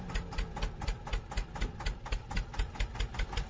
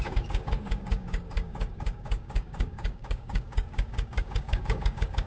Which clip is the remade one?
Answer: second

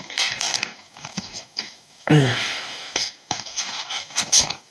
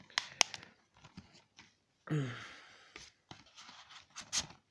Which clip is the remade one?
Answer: first